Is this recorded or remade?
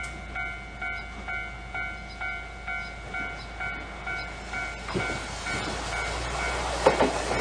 recorded